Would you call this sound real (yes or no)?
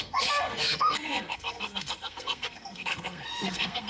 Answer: no